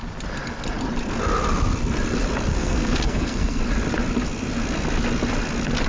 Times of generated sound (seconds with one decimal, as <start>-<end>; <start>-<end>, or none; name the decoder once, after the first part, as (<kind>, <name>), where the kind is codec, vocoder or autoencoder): 2.5-3.6 (codec, SNAC)